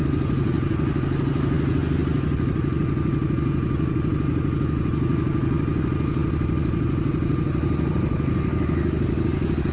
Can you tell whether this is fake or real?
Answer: real